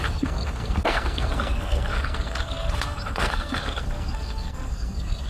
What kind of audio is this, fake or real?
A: fake